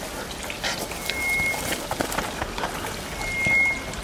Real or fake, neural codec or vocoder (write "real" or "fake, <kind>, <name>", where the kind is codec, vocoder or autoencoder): real